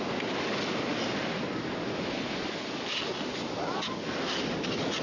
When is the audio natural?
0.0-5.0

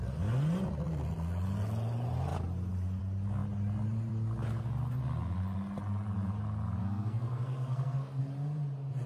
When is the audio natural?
0.0-6.8; 8.2-9.1

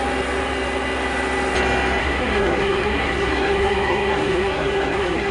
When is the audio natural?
0.0-2.0

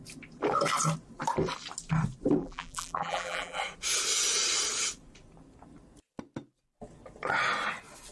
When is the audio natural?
0.0-2.4; 3.6-8.1

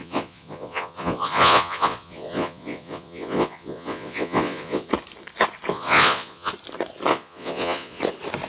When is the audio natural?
4.9-5.7; 6.5-7.1; 8.0-8.5

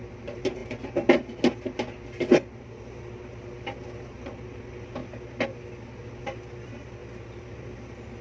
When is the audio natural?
0.0-7.0; 7.6-8.2

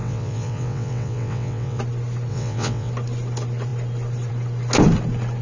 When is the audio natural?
1.8-2.3; 2.9-5.4

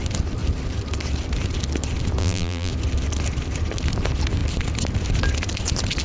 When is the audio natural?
0.0-2.2; 2.7-6.0